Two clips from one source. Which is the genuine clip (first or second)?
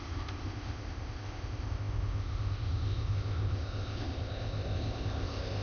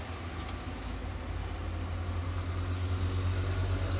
second